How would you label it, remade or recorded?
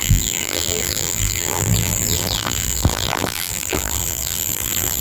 remade